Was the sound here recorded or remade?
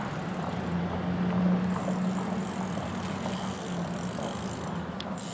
recorded